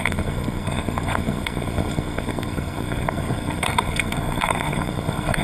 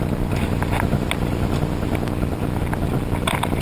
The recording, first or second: second